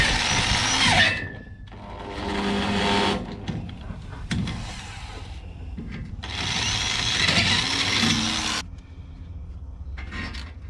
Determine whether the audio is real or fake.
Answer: real